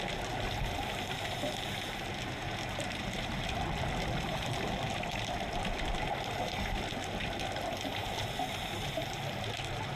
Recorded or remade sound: recorded